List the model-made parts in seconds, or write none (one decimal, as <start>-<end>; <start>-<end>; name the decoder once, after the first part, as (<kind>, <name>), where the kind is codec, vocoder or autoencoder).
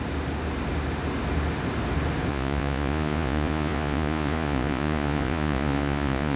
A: 2.3-6.4 (vocoder, Vocos)